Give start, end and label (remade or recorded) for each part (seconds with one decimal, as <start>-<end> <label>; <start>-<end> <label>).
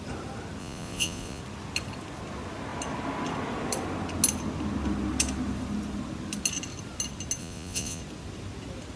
0.0-0.6 recorded; 0.6-1.4 remade; 1.4-7.4 recorded; 7.4-8.0 remade; 8.0-9.0 recorded